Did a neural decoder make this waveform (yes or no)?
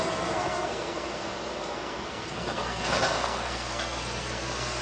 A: yes